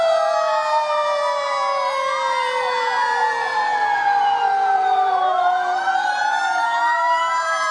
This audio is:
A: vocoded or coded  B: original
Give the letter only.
A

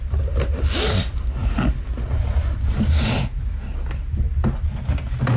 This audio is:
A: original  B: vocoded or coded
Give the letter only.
A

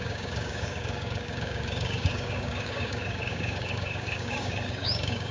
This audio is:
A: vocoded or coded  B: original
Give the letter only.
A